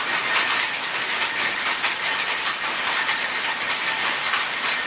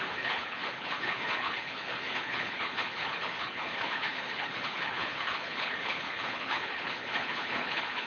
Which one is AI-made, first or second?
second